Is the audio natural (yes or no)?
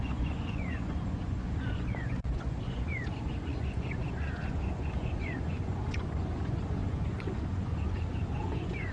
no